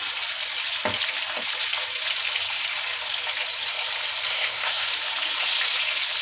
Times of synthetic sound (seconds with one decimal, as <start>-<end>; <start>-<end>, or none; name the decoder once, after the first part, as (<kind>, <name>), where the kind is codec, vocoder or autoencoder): 4.3-4.9 (codec, SNAC)